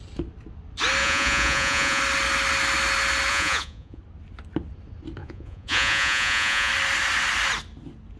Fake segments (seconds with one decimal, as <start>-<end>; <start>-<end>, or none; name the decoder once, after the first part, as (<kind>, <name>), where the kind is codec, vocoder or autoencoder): 1.0-2.0 (vocoder, Vocos); 3.3-4.0; 5.2-6.7